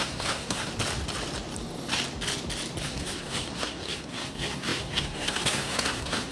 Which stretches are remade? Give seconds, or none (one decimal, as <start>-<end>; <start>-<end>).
0.0-0.7; 2.8-6.3